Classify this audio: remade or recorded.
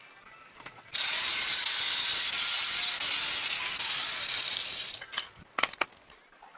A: recorded